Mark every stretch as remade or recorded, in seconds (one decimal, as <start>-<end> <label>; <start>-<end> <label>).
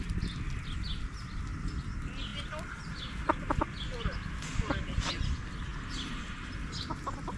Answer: 0.0-5.7 recorded; 5.7-6.7 remade; 6.7-7.4 recorded